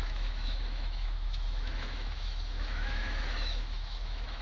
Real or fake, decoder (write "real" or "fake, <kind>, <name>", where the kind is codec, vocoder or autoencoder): fake, autoencoder, DAC-VAE